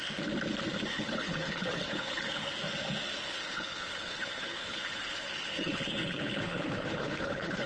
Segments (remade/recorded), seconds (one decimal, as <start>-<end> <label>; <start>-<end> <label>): 0.0-0.9 recorded; 0.9-2.5 remade; 2.5-3.2 recorded; 3.2-7.7 remade